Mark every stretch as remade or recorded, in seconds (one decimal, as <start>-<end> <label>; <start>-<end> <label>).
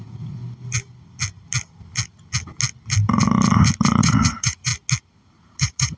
0.0-0.4 remade; 0.4-4.0 recorded; 4.0-4.7 remade; 4.7-5.4 recorded; 5.4-6.0 remade